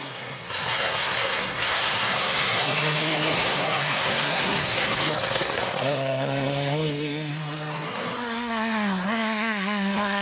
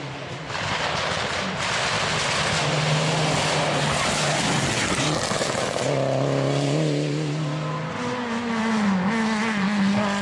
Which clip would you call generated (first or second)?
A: first